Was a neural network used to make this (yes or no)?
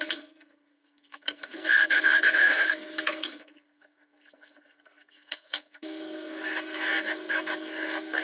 yes